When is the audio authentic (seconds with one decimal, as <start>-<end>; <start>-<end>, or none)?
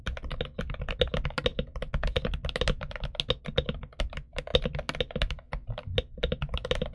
0.0-6.9